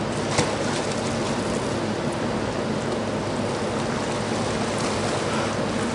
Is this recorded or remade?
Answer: recorded